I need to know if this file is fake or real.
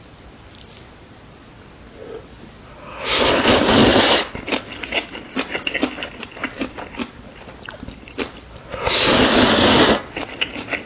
real